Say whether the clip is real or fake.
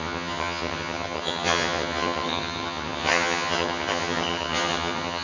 fake